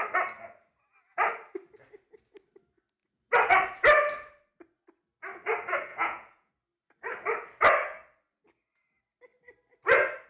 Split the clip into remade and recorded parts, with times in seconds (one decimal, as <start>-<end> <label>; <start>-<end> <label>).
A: 0.0-5.9 recorded; 5.9-6.5 remade; 6.5-10.3 recorded